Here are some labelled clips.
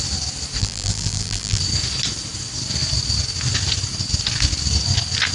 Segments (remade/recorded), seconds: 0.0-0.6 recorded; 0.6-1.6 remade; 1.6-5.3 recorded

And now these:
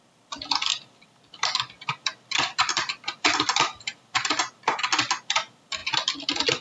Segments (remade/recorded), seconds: 0.0-0.7 recorded; 0.7-4.4 remade; 4.4-5.8 recorded; 5.8-6.6 remade

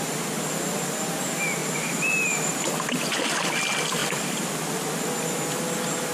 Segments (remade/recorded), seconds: 0.0-1.6 recorded; 1.6-3.2 remade; 3.2-4.0 recorded; 4.0-4.5 remade; 4.5-6.1 recorded

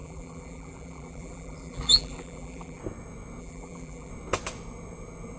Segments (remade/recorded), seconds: 0.0-2.8 remade; 2.8-3.4 recorded; 3.4-4.1 remade; 4.1-5.4 recorded